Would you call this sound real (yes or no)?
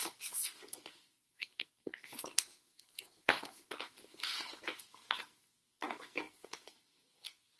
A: no